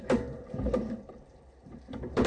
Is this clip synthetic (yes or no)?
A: yes